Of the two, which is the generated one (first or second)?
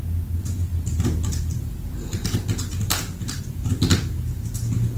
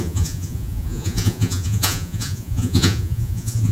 second